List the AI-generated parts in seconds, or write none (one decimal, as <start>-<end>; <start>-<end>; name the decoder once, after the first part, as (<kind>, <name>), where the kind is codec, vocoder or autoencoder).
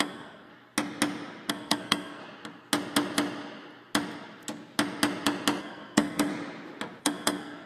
0.0-0.5 (codec, SNAC); 1.5-2.2; 5.6-6.3; 7.0-7.7